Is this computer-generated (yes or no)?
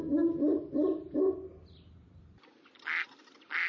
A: no